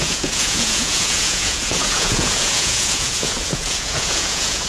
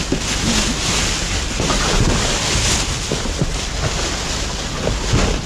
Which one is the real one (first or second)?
second